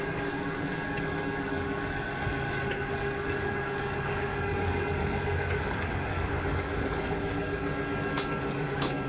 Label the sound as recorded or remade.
remade